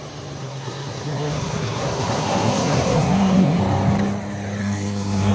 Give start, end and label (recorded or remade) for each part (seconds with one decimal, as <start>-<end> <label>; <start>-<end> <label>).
0.0-0.4 recorded; 0.4-3.6 remade; 3.6-4.6 recorded; 4.6-5.3 remade